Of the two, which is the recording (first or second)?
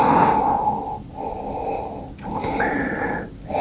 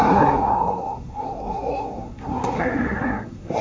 first